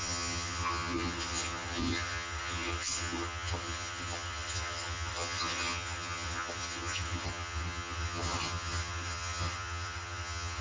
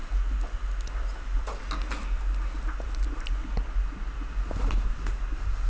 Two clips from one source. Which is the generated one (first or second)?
first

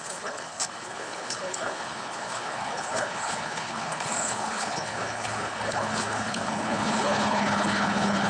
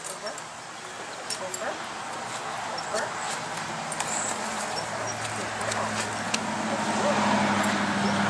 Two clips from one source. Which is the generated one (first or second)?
first